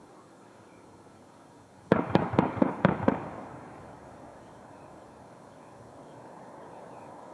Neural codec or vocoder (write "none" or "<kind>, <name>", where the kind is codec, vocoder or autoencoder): codec, DAC